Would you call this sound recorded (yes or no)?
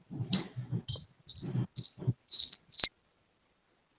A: yes